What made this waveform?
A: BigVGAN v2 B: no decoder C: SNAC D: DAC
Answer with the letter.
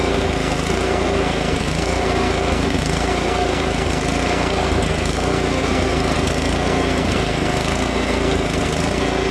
C